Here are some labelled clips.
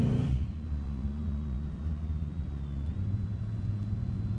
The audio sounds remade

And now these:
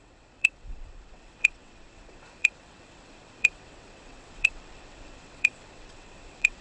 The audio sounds remade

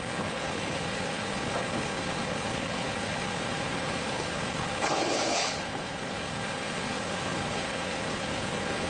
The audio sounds remade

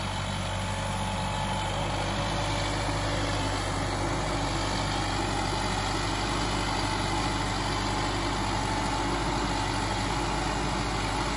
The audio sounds recorded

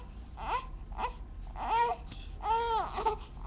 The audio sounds recorded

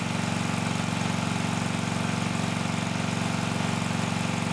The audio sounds recorded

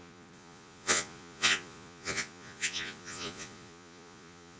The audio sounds remade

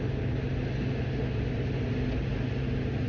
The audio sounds recorded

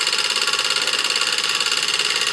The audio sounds recorded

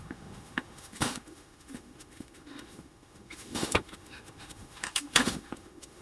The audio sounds remade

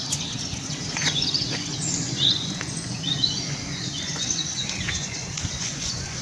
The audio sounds remade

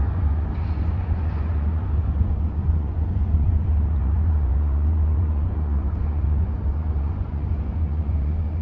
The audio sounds remade